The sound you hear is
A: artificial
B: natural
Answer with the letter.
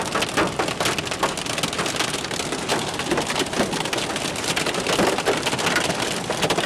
B